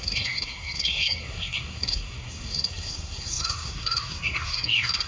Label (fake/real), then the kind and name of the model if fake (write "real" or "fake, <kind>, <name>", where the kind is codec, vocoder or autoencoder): fake, codec, SNAC